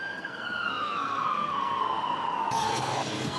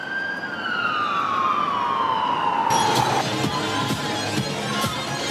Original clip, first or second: second